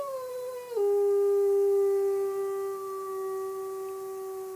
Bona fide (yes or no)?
yes